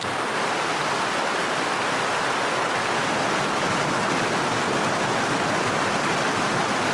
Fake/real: real